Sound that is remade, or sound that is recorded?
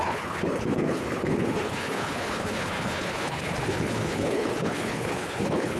remade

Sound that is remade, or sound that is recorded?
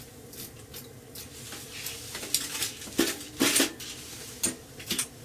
recorded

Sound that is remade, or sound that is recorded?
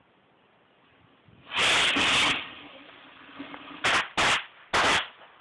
recorded